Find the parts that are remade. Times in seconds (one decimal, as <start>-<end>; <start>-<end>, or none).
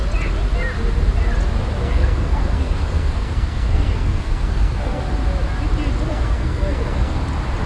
1.8-5.0; 6.1-7.2